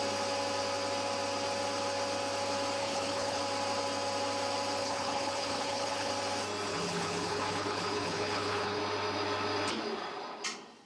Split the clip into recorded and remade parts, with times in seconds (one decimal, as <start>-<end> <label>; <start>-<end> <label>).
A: 0.0-2.8 recorded; 2.8-3.4 remade; 3.4-4.8 recorded; 4.8-6.1 remade; 6.1-6.7 recorded; 6.7-8.8 remade; 8.8-10.9 recorded